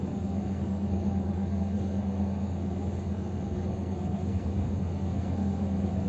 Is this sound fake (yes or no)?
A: yes